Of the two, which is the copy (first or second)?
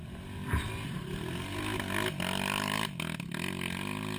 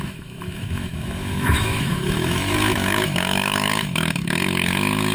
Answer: second